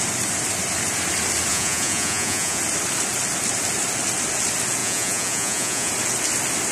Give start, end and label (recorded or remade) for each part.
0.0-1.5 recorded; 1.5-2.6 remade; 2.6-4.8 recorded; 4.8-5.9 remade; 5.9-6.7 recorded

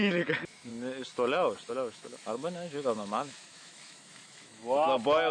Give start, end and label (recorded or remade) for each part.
0.0-0.7 remade; 0.7-1.7 recorded; 1.7-4.6 remade; 4.6-5.3 recorded